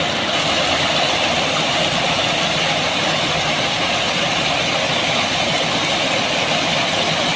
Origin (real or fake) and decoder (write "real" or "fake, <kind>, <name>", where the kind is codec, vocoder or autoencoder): real